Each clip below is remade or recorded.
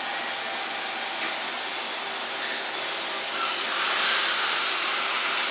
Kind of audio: recorded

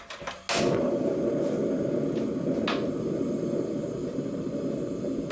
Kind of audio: recorded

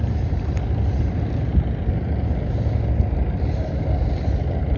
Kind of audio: recorded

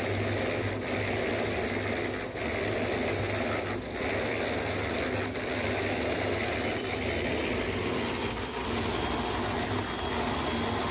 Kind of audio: recorded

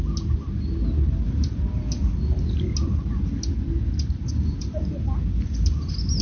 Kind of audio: recorded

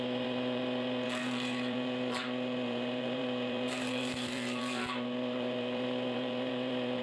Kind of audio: remade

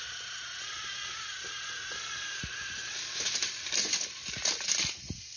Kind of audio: recorded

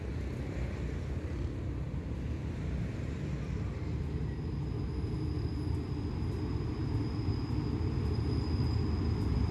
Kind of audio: recorded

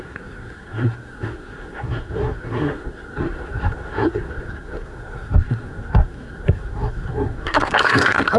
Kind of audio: remade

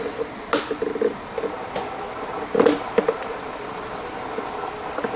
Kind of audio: recorded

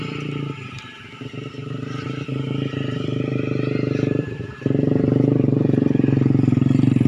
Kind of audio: remade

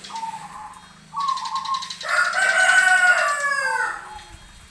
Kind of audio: recorded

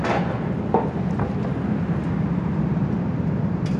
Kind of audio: recorded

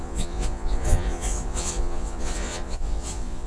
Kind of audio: remade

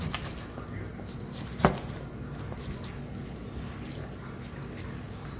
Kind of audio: recorded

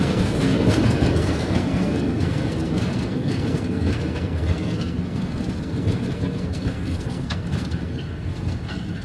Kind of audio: remade